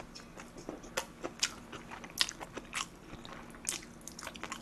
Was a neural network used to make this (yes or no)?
no